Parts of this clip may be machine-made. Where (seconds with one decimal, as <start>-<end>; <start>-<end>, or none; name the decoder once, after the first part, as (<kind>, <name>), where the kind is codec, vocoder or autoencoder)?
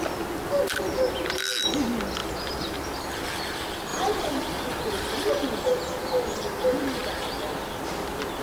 2.2-3.1 (vocoder, BigVGAN v2); 3.9-5.3